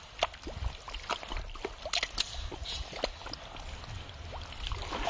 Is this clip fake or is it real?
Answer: real